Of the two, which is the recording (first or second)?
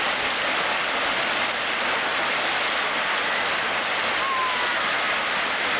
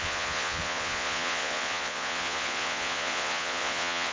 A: first